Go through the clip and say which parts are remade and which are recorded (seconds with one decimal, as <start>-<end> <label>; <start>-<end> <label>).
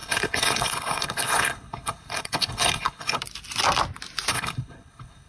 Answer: 0.0-3.2 remade; 3.2-4.3 recorded; 4.3-5.3 remade